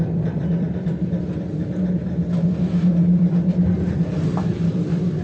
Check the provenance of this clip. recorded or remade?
remade